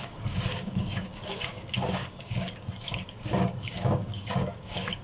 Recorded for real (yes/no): no